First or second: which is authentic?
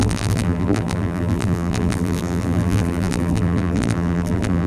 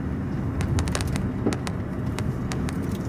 second